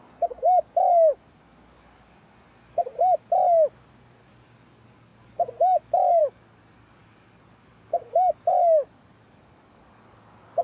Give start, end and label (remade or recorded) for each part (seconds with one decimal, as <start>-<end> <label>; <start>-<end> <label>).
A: 0.0-2.9 remade; 2.9-4.2 recorded; 4.2-10.6 remade